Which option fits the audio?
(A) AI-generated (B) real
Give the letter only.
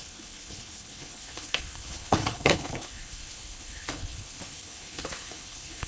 A